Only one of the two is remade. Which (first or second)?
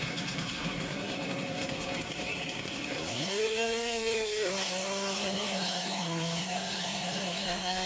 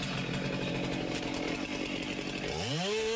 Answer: first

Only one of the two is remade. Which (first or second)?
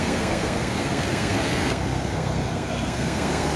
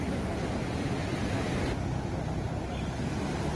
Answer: first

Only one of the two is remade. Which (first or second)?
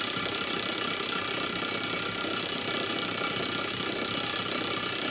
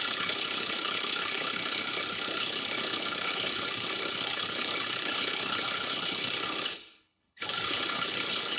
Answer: second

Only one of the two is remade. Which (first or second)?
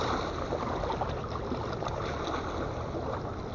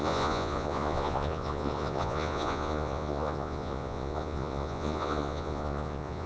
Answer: second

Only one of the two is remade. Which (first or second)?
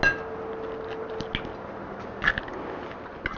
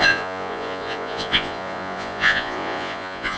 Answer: second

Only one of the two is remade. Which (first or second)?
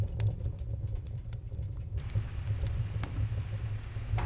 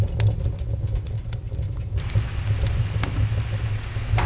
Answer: first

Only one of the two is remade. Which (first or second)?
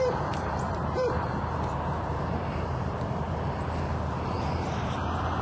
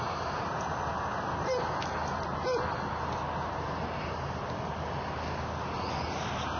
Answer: first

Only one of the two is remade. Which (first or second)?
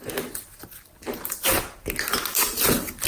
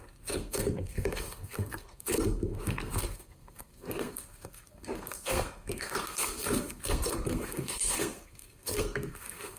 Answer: second